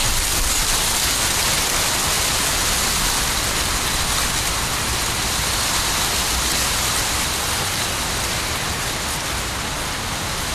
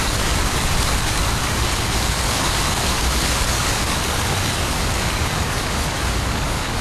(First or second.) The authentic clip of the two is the first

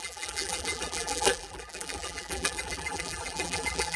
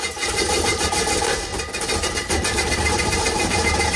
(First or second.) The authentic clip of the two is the second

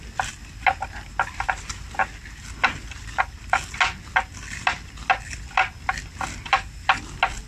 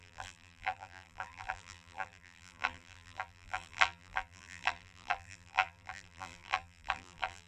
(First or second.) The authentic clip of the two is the first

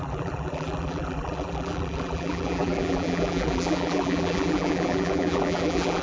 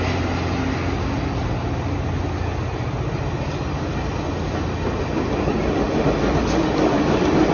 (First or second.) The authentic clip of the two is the second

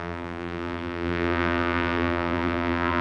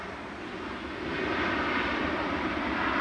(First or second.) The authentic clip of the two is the second